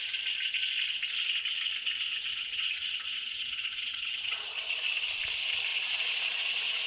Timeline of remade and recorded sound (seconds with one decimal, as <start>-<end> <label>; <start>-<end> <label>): 0.0-2.1 recorded; 2.1-4.7 remade; 4.7-5.7 recorded; 5.7-6.9 remade